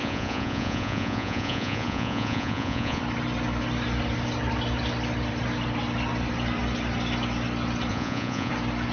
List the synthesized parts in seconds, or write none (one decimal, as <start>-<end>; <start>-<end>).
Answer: 0.0-3.0; 7.9-8.5